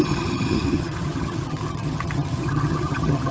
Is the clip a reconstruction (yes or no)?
yes